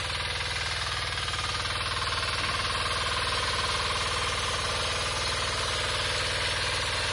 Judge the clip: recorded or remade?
recorded